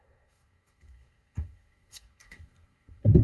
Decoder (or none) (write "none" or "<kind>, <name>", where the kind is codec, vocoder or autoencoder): codec, SNAC